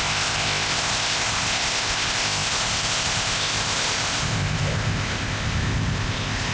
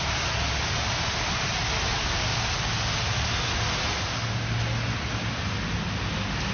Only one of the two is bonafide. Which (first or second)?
second